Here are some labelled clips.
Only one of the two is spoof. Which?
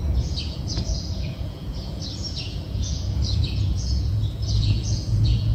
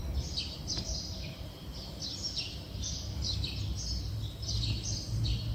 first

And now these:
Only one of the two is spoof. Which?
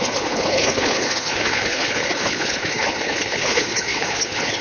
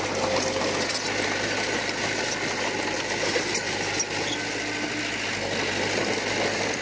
first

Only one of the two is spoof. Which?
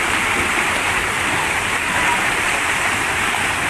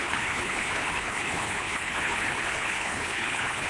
second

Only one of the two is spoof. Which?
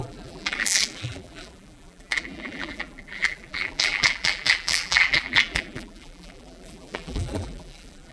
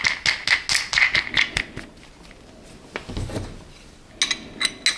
first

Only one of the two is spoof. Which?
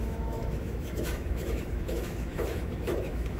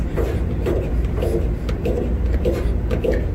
first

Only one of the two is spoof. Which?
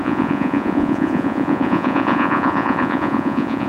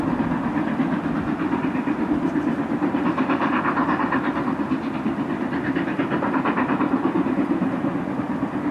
first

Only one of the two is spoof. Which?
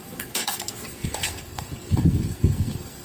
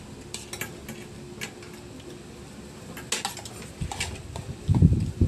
first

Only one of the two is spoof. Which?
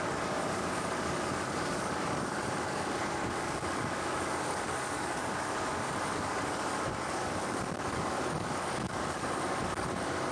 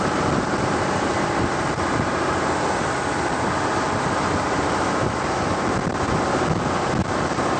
first